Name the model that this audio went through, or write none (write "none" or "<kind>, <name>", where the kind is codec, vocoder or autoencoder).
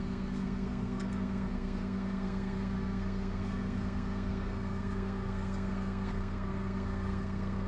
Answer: codec, SNAC